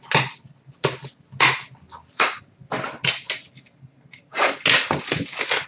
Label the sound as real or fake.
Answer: real